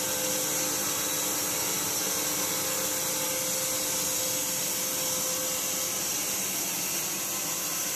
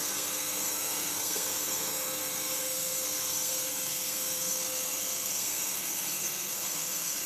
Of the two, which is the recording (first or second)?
first